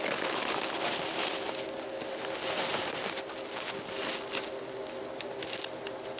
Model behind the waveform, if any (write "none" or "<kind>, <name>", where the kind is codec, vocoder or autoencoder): none